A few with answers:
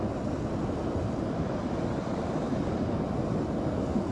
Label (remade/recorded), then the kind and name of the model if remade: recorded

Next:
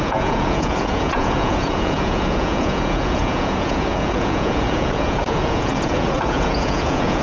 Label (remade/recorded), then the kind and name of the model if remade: remade, vocoder, Vocos